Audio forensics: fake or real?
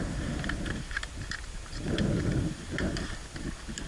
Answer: fake